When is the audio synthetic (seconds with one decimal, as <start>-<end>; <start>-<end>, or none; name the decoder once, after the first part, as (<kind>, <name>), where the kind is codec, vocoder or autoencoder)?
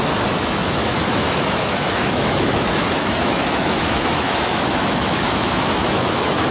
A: 0.0-6.5 (autoencoder, DAC-VAE)